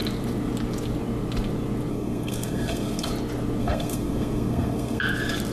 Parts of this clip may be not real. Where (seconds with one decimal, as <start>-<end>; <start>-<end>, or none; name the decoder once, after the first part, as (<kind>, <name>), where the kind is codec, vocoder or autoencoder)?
1.9-3.1 (codec, SNAC); 3.6-5.0